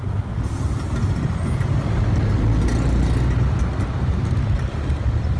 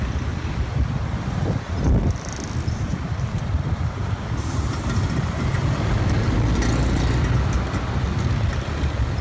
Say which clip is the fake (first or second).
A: second